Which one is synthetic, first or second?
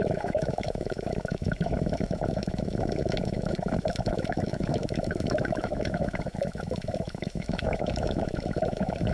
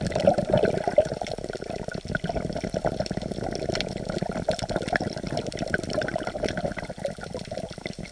first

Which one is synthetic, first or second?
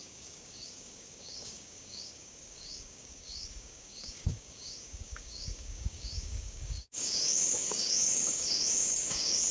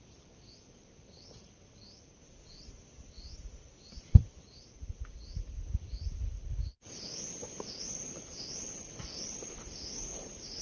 first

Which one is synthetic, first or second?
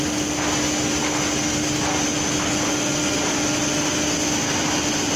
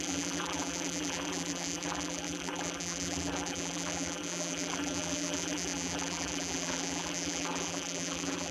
second